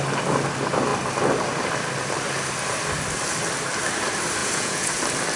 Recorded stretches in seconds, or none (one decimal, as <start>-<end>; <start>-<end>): 0.0-4.4; 5.0-5.4